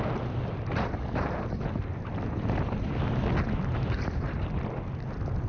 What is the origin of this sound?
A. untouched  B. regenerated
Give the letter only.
A